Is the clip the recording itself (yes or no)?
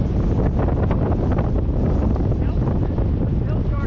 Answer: yes